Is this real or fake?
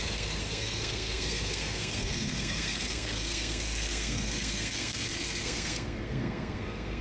fake